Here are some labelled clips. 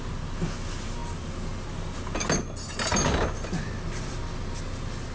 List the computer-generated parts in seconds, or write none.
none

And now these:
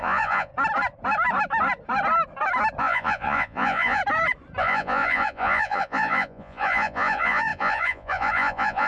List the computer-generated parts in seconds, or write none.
0.0-0.5 (vocoder, Vocos); 2.8-4.0; 4.6-8.9